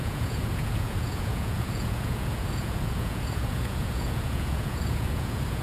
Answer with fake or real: fake